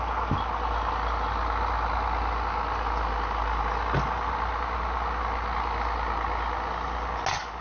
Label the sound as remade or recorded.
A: recorded